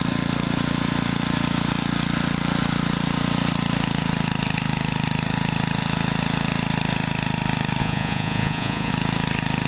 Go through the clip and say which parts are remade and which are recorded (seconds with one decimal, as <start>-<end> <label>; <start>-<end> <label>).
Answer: 0.0-7.8 recorded; 7.8-8.9 remade; 8.9-9.7 recorded